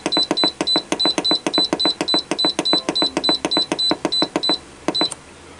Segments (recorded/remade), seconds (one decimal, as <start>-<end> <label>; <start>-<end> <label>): 0.0-5.6 recorded